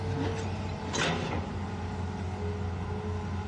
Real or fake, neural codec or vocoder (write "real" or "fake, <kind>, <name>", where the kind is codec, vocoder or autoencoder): real